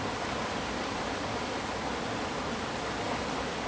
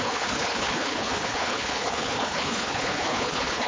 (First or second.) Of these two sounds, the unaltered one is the first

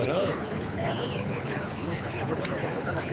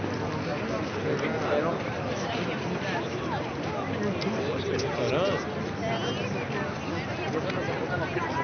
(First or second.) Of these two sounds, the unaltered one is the second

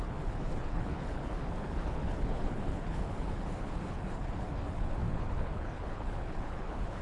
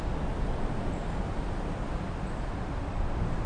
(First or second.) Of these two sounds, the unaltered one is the second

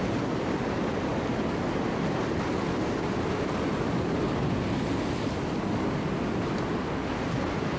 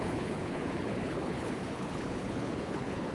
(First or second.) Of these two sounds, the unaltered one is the first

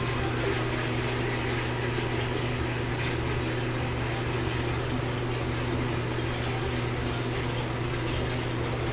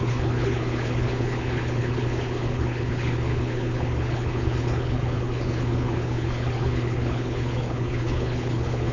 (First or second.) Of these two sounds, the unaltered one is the first